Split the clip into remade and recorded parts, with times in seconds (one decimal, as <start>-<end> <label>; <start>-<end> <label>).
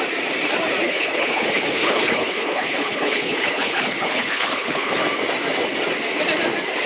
0.0-0.8 recorded; 0.8-4.9 remade; 4.9-6.9 recorded